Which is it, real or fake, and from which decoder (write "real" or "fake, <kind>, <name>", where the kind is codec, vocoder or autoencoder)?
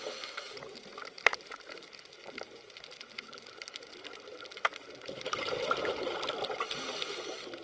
real